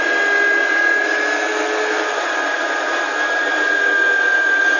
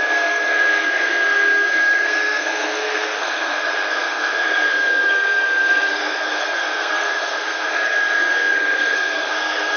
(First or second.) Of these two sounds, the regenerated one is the second